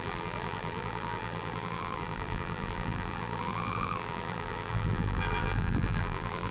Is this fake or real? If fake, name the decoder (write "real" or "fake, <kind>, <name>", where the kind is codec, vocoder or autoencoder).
fake, vocoder, BigVGAN v2